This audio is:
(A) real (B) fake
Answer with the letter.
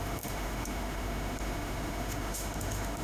B